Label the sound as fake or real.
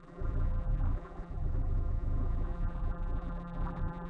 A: fake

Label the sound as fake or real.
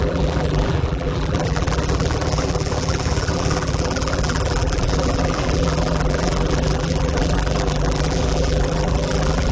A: fake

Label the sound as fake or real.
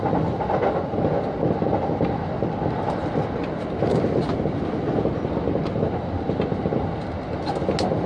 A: real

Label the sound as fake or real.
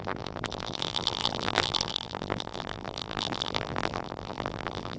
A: fake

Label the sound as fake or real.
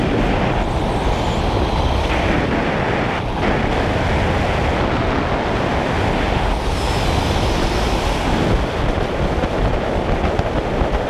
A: real